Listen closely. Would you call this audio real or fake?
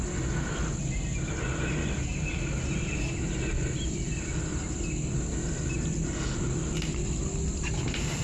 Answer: real